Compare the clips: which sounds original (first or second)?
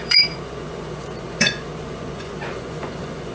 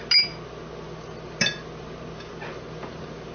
second